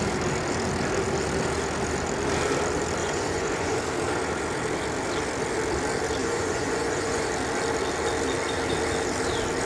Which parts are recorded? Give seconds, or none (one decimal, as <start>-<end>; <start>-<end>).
0.0-3.0; 3.8-6.2; 7.3-9.7